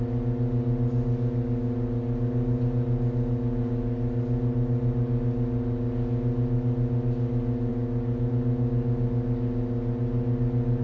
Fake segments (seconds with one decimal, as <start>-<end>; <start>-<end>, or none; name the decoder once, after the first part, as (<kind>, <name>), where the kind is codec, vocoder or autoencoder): none